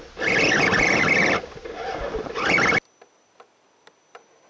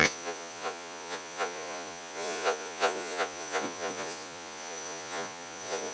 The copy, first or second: second